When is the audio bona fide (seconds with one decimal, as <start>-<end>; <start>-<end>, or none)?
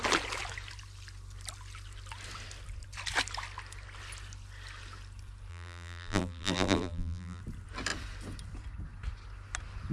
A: 0.0-5.5; 7.4-9.9